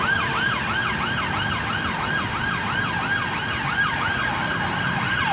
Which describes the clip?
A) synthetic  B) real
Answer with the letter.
B